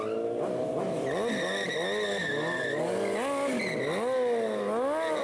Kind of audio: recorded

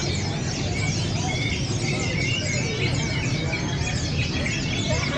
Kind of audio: recorded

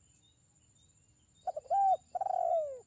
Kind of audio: recorded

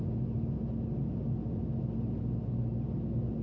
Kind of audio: recorded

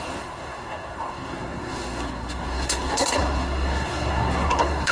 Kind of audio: remade